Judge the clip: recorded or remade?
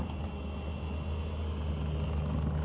recorded